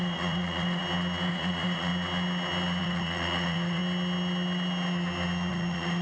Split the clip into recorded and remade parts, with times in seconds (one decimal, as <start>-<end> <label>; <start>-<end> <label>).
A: 0.0-0.8 remade; 0.8-1.3 recorded; 1.3-1.9 remade; 1.9-2.8 recorded; 2.8-3.8 remade; 3.8-5.5 recorded; 5.5-6.0 remade